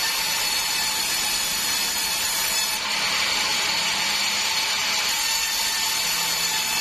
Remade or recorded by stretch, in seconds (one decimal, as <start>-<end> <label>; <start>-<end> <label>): 0.0-1.3 remade; 1.3-6.8 recorded